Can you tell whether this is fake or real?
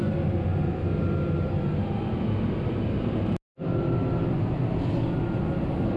real